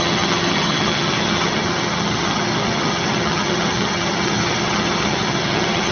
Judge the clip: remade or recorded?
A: remade